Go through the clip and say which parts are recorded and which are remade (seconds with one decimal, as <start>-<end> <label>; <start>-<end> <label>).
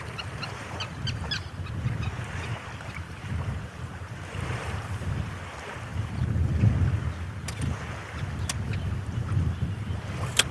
0.0-10.5 recorded